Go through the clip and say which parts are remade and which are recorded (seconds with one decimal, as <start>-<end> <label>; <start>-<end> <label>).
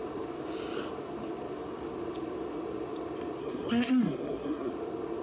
0.0-3.4 recorded; 3.4-4.7 remade; 4.7-5.2 recorded